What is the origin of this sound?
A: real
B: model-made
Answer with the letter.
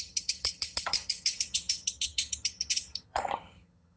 B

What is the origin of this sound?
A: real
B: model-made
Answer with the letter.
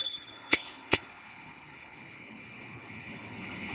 B